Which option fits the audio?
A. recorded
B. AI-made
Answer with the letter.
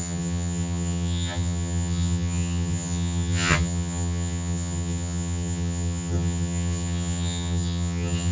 B